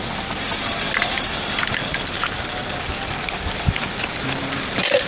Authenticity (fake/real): real